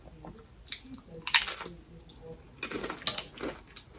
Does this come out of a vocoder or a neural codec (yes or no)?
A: no